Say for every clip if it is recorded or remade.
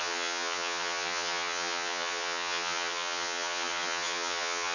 remade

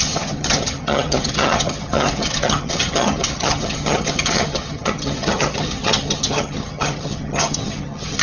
remade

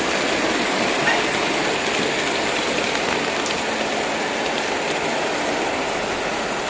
recorded